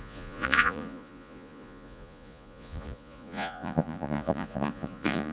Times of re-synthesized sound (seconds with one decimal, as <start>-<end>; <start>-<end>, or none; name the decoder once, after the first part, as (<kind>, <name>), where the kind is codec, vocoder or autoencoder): 0.0-5.3 (vocoder, Vocos)